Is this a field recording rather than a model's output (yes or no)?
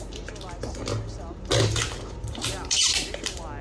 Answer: yes